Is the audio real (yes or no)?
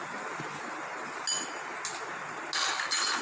yes